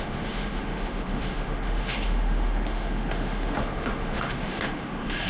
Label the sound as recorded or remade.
remade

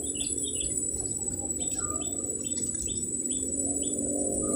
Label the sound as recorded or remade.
recorded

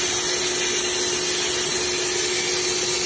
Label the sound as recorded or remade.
recorded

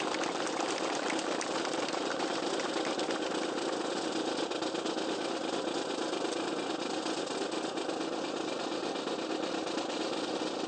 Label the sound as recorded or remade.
recorded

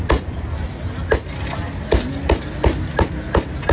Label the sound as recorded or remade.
recorded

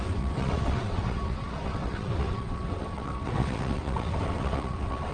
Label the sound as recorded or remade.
remade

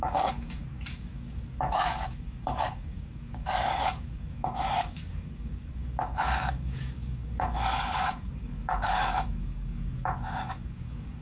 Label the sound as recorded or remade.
remade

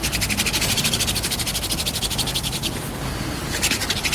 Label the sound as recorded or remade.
recorded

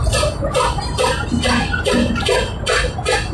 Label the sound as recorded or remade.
recorded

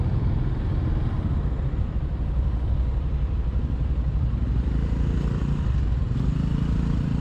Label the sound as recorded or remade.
recorded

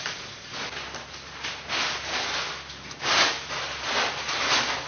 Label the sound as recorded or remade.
recorded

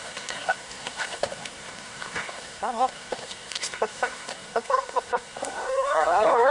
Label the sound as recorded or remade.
remade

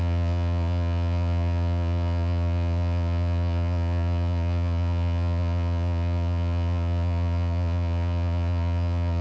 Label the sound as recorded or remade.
remade